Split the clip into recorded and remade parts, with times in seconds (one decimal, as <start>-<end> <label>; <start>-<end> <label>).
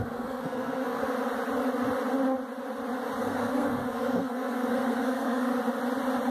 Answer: 0.0-1.0 remade; 1.0-3.2 recorded; 3.2-5.5 remade; 5.5-6.3 recorded